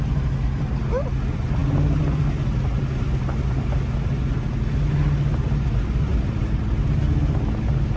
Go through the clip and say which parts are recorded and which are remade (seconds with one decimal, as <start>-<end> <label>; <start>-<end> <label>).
0.0-8.0 recorded